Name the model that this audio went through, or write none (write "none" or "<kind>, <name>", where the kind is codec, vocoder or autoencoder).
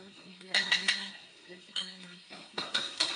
codec, SNAC